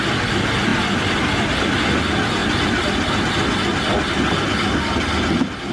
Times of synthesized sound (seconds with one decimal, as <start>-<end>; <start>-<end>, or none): none